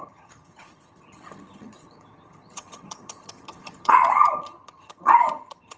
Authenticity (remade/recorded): remade